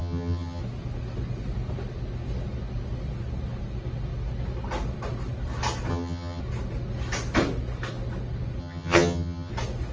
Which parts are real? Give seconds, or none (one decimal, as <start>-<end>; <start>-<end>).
0.6-5.9; 6.4-8.6; 9.5-9.9